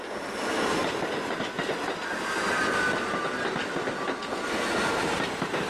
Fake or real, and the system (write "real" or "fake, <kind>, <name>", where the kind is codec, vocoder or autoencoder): real